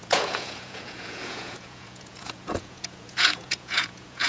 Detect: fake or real fake